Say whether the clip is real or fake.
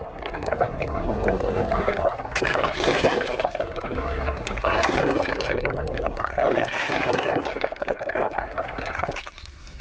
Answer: fake